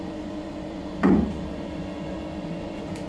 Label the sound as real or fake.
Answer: fake